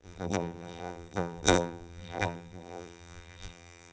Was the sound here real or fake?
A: fake